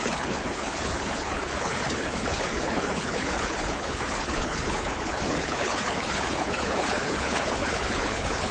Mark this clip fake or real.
fake